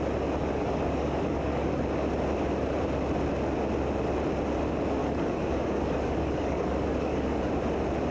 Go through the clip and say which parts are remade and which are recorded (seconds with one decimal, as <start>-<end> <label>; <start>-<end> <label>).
0.0-0.4 recorded; 0.4-1.8 remade; 1.8-5.0 recorded; 5.0-7.5 remade; 7.5-8.1 recorded